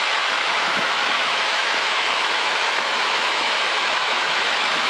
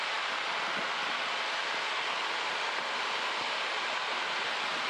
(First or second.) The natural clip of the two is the second